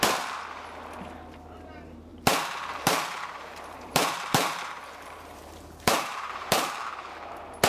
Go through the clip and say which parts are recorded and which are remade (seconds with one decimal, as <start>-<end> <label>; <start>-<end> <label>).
0.0-2.1 recorded; 2.1-6.7 remade; 6.7-7.7 recorded